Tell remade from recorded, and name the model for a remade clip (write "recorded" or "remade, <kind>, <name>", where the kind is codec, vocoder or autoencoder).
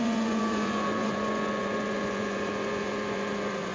remade, vocoder, Vocos